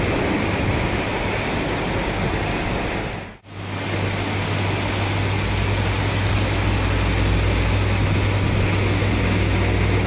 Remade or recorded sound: recorded